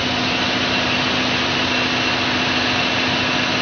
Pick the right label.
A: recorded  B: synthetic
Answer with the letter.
A